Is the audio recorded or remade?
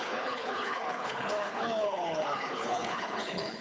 remade